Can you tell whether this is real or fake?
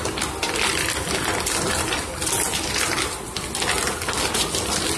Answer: real